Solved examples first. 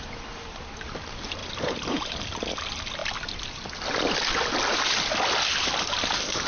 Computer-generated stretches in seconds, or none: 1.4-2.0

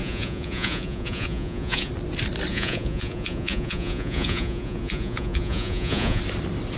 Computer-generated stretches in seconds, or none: 0.0-1.9; 2.5-6.2

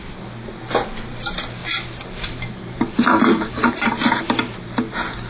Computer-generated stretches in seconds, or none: 1.6-4.2

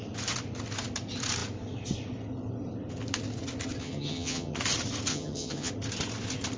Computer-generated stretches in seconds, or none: 3.8-4.6; 5.1-5.7

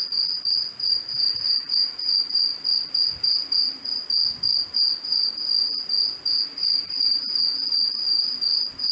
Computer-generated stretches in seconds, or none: 0.0-1.1

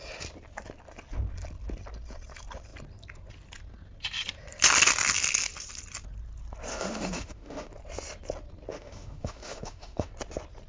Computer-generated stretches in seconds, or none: 6.7-7.7; 8.7-10.1

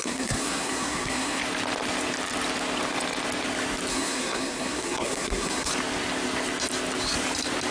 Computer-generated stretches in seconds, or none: 0.0-1.4; 3.9-5.7